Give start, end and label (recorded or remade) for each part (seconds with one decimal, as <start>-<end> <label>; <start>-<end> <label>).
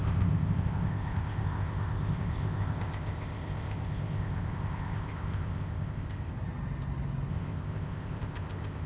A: 0.0-6.3 remade; 6.3-7.3 recorded; 7.3-8.9 remade